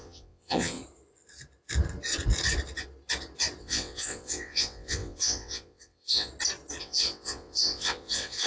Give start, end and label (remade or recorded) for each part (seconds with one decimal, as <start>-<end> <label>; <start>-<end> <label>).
0.0-0.8 remade; 0.8-3.6 recorded; 3.6-6.3 remade; 6.3-6.8 recorded; 6.8-8.5 remade